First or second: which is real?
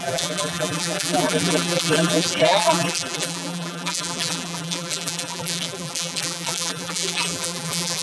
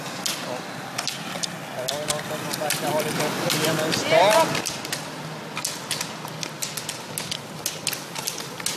second